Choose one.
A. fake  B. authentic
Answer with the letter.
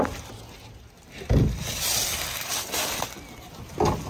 B